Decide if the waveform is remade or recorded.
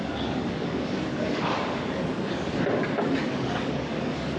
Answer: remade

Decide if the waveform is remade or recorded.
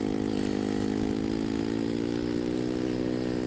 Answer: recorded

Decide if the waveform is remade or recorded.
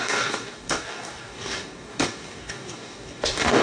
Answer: remade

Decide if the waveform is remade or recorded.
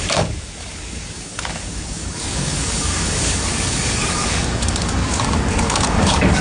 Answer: remade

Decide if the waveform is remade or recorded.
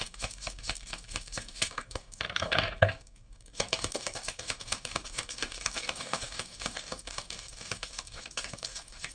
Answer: remade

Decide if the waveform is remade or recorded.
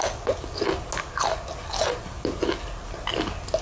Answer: recorded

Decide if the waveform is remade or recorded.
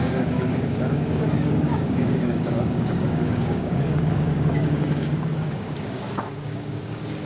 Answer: remade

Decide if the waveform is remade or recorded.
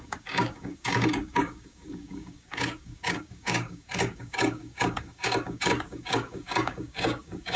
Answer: remade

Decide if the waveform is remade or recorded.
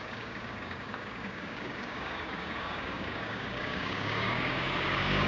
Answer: remade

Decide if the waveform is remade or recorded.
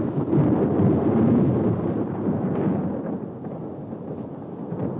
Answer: recorded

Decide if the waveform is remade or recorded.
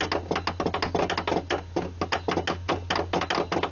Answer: recorded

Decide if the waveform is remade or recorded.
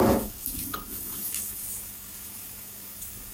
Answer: remade